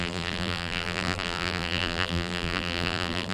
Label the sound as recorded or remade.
remade